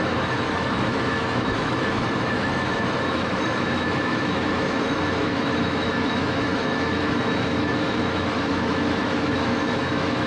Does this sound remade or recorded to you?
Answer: remade